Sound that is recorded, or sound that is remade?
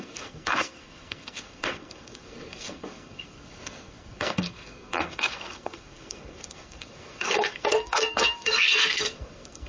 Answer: remade